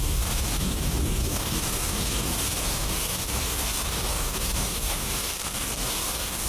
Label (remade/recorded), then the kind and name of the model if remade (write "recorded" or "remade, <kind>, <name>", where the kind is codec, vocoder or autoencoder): remade, codec, DAC